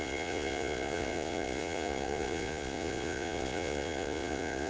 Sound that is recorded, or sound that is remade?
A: remade